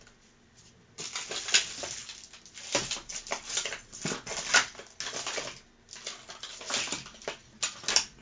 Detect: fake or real real